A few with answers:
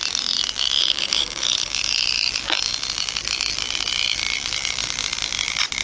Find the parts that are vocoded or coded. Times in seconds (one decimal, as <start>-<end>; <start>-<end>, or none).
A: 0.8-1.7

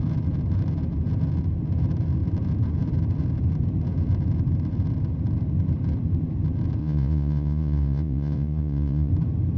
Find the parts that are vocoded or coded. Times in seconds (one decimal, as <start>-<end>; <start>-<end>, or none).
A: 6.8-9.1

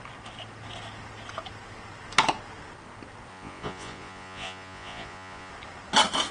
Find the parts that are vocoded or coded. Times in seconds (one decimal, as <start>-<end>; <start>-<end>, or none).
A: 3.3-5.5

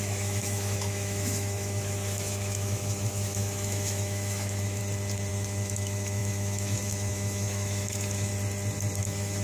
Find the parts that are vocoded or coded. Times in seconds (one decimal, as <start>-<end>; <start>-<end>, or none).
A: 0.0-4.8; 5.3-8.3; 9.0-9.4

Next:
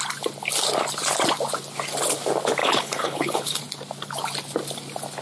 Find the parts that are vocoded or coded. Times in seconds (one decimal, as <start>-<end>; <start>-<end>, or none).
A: 2.6-3.6

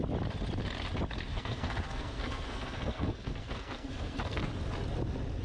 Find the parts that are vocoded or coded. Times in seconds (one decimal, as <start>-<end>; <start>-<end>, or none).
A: 1.3-4.5

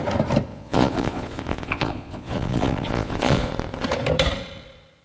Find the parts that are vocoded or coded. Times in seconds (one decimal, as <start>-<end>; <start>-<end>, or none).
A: 0.5-3.5